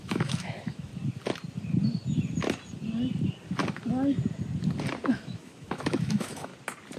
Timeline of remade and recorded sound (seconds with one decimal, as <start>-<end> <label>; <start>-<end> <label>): 0.0-0.9 remade; 0.9-5.1 recorded; 5.1-6.5 remade; 6.5-7.0 recorded